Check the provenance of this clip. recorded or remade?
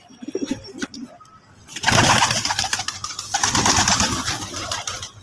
recorded